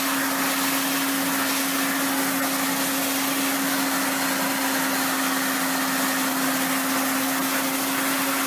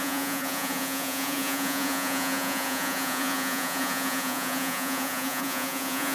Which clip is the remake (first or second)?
second